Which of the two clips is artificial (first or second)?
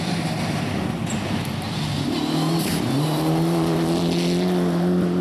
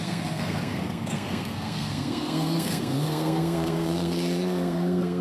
second